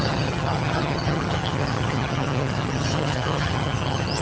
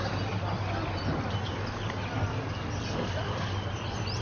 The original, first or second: second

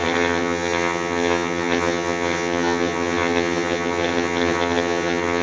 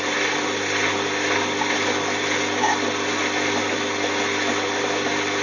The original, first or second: second